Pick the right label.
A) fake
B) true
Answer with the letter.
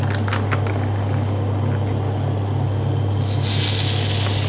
B